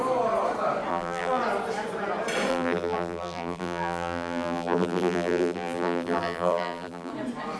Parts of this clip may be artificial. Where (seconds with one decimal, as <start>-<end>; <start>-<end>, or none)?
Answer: 0.9-1.4; 2.5-7.1

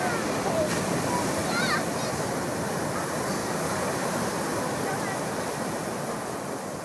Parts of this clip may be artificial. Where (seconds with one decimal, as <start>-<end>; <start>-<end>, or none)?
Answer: 1.4-2.5; 3.4-4.3